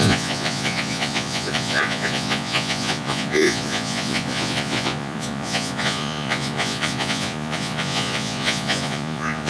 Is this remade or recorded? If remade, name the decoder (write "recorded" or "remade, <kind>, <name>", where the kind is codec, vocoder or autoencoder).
remade, vocoder, Vocos